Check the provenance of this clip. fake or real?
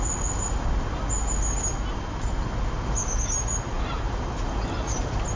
real